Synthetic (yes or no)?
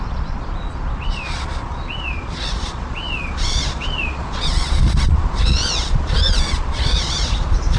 yes